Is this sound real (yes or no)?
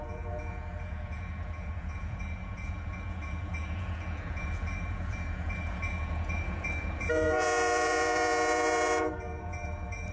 no